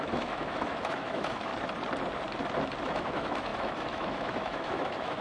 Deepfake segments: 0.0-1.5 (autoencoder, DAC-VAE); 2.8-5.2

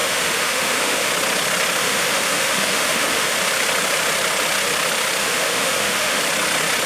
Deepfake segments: 0.0-1.1 (autoencoder, DAC-VAE); 1.8-3.3; 5.2-6.2

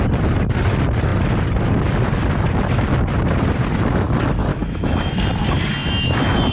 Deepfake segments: 4.5-5.1 (autoencoder, DAC-VAE); 5.8-6.5

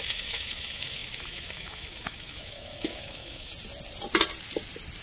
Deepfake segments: 0.0-3.5 (autoencoder, DAC-VAE)

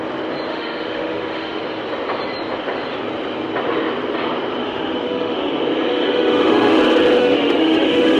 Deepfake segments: 0.5-1.6 (autoencoder, DAC-VAE); 4.6-5.5; 5.9-6.8; 7.2-8.2

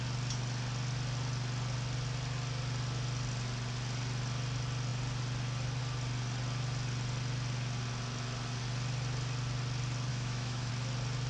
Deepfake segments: 10.1-10.7 (autoencoder, DAC-VAE)